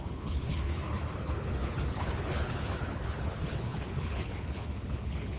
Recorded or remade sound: remade